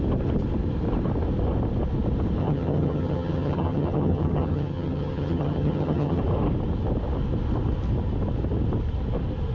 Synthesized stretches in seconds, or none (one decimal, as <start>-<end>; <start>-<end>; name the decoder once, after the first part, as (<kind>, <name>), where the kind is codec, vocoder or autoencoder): 2.4-6.2 (vocoder, HiFi-GAN)